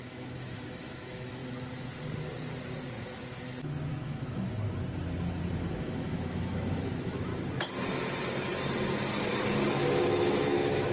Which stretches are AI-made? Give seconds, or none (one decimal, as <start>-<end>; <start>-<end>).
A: 0.0-1.4; 3.9-4.5; 5.8-7.3; 9.7-10.9